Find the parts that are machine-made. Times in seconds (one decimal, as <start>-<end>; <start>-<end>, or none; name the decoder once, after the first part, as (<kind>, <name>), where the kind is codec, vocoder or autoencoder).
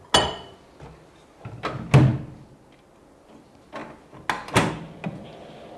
none